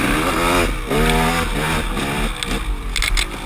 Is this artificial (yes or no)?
no